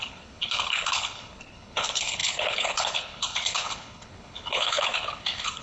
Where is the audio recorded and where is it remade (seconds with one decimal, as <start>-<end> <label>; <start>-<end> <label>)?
0.0-5.6 remade